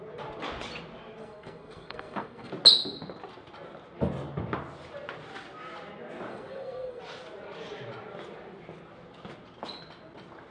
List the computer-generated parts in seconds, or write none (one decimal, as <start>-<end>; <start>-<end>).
1.2-2.5; 6.3-7.0